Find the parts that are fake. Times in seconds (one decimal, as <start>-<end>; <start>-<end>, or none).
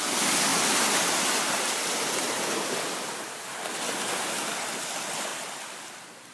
0.5-2.4